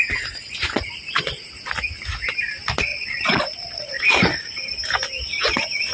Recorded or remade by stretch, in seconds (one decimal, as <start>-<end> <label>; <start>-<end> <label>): 0.0-2.9 recorded; 2.9-4.0 remade; 4.0-5.9 recorded